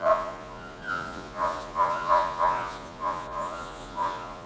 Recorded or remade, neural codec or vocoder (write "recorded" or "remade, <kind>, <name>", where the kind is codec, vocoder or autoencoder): remade, vocoder, Vocos